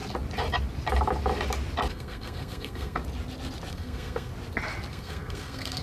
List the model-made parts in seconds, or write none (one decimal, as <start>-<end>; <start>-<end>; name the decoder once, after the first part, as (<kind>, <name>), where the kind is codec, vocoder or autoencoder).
1.9-3.0 (codec, SNAC); 3.7-4.3; 4.9-5.8